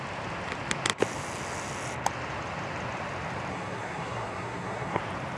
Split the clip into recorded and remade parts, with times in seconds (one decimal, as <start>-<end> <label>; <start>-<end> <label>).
0.0-3.5 recorded; 3.5-5.0 remade; 5.0-5.4 recorded